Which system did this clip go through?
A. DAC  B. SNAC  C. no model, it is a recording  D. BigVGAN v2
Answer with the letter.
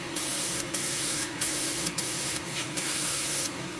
B